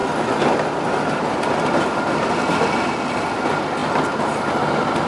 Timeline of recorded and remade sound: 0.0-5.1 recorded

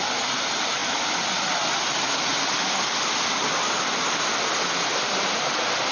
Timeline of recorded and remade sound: 0.0-5.9 recorded

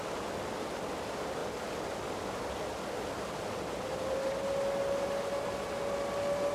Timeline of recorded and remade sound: 0.0-6.5 recorded

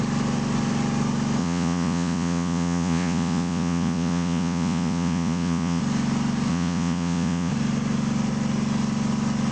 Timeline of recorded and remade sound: 0.0-1.4 recorded; 1.4-5.8 remade; 5.8-6.5 recorded; 6.5-7.5 remade; 7.5-9.5 recorded

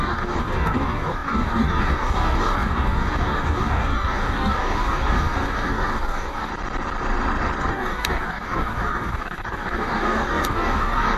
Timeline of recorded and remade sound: 0.0-6.5 remade; 6.5-7.7 recorded; 7.7-11.2 remade

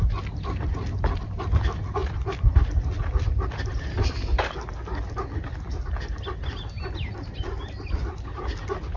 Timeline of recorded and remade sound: 0.0-9.0 recorded

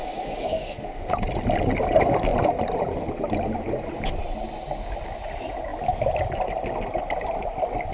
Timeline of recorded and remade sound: 0.0-1.1 remade; 1.1-7.9 recorded

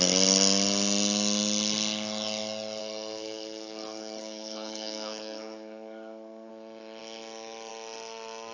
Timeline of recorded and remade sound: 0.0-2.8 recorded; 2.8-6.5 remade; 6.5-8.5 recorded